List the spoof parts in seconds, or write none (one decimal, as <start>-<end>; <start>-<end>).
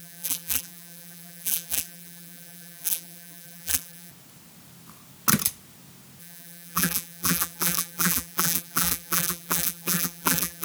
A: 0.0-4.1; 6.2-10.6